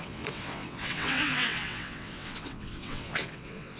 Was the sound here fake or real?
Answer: fake